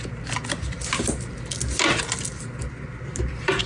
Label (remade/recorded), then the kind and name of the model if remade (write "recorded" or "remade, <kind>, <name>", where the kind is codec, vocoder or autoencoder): recorded